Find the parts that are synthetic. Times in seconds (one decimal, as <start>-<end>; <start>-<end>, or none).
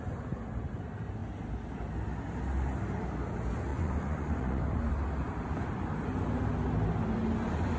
3.7-4.6